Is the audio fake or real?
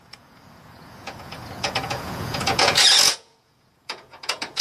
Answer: fake